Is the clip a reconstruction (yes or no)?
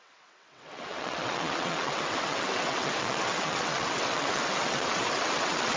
yes